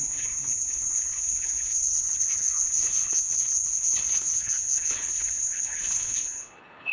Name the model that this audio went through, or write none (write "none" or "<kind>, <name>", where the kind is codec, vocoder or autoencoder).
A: codec, HILCodec